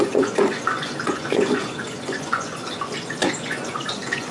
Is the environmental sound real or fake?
fake